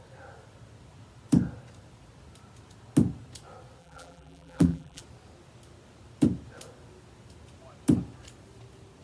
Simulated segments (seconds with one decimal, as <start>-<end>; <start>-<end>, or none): 3.8-5.0